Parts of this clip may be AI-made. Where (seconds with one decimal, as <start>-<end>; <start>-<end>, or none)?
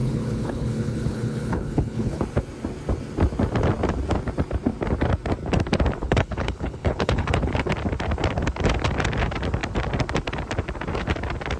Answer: 0.0-2.2; 6.0-7.7